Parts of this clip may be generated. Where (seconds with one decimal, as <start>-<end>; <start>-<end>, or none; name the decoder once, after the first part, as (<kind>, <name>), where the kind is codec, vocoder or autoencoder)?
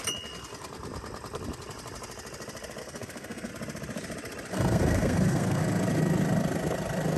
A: 2.8-3.5 (codec, SNAC); 4.5-5.6